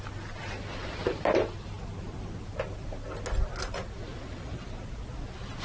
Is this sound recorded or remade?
recorded